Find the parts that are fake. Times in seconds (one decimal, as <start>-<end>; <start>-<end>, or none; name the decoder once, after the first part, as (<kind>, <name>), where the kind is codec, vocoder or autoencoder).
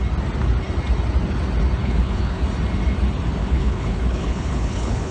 1.8-2.4 (codec, HILCodec); 3.4-5.1